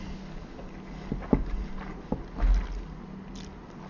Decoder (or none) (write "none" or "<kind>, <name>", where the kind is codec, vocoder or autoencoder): none